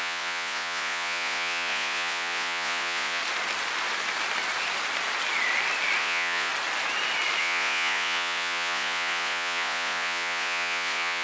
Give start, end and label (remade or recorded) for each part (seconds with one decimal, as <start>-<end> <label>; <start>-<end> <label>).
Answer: 0.0-3.2 remade; 3.2-6.0 recorded; 6.0-6.5 remade; 6.5-7.4 recorded; 7.4-11.2 remade